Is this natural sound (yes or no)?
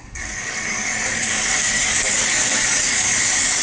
no